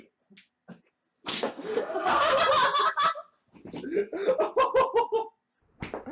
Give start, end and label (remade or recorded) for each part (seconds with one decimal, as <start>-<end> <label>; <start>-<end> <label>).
0.0-1.3 recorded; 1.3-2.4 remade; 2.4-6.1 recorded